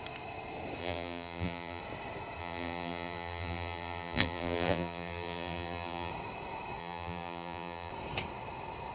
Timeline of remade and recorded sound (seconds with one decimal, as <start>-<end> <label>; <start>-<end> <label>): 0.0-0.8 recorded; 0.8-1.8 remade; 1.8-2.4 recorded; 2.4-6.1 remade; 6.1-6.8 recorded; 6.8-7.9 remade; 7.9-8.9 recorded